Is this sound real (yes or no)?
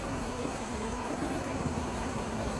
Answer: no